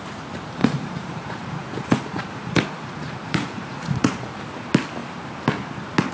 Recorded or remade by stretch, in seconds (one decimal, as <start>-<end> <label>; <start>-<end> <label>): 0.0-0.6 recorded; 0.6-4.3 remade; 4.3-6.1 recorded